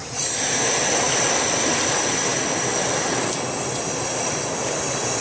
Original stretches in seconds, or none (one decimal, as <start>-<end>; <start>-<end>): 0.0-5.2